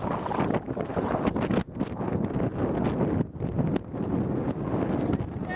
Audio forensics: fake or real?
real